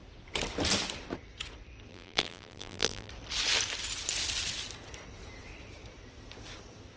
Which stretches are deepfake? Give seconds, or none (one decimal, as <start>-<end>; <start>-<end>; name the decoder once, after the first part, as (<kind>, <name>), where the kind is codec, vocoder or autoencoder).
1.9-3.1 (vocoder, BigVGAN v2)